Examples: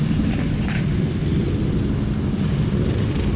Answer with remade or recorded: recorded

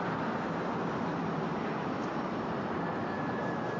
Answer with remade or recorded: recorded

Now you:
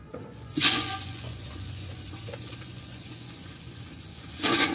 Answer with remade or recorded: remade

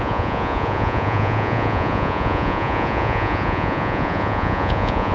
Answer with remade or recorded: remade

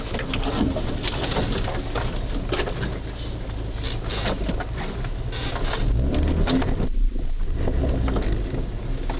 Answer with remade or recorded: recorded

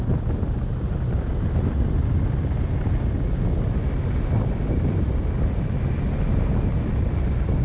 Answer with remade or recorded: recorded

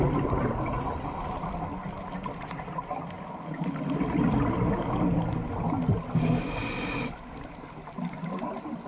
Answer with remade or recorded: recorded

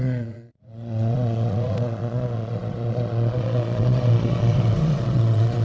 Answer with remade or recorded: remade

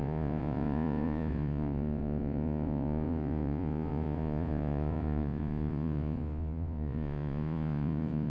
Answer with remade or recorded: remade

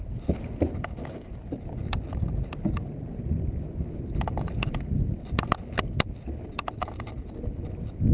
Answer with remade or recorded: recorded